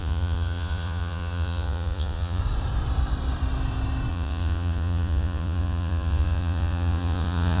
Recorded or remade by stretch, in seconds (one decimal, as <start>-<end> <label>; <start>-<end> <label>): 0.0-2.4 remade; 2.4-4.1 recorded; 4.1-7.6 remade